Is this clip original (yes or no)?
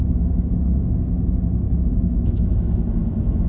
no